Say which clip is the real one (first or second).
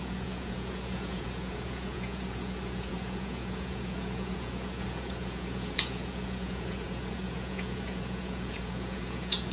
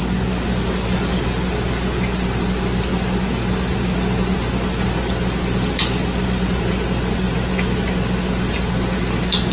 second